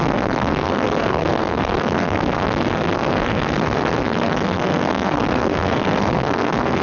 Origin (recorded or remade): remade